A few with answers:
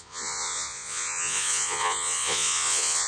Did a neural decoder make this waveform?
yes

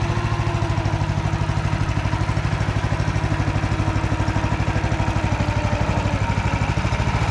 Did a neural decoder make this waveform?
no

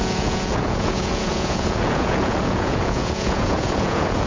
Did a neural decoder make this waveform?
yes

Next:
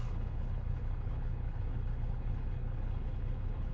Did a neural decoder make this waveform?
yes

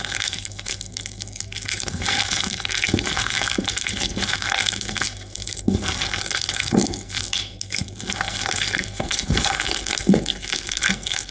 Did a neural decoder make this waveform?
yes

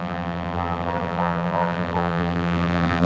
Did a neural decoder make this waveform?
yes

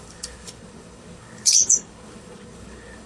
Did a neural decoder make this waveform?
yes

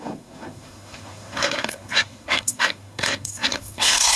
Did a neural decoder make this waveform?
yes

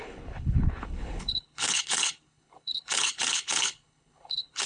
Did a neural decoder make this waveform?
yes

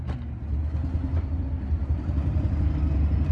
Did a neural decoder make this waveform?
no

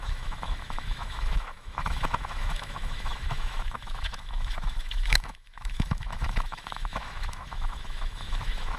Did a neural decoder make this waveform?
yes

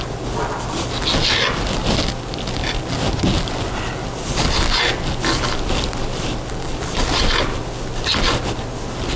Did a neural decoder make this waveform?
no